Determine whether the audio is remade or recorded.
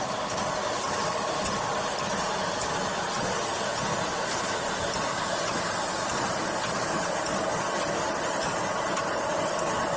recorded